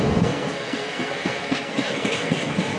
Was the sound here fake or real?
fake